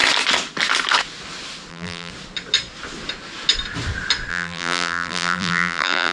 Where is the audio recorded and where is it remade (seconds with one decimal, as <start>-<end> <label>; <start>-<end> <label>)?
0.0-1.7 recorded; 1.7-2.1 remade; 2.1-4.3 recorded; 4.3-6.1 remade